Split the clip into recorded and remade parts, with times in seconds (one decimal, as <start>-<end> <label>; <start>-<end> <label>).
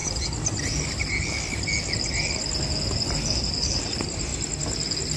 0.0-5.2 recorded